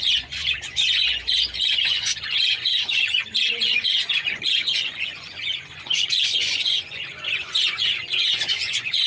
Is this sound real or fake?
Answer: fake